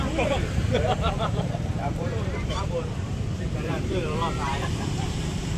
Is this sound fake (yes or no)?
yes